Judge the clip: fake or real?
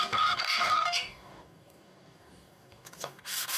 fake